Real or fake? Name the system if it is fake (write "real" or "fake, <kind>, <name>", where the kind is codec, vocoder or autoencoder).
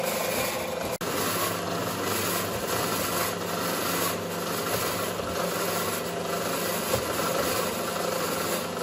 real